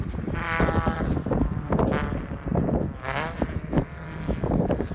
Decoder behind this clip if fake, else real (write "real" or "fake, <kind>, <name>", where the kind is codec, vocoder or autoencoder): fake, vocoder, BigVGAN v2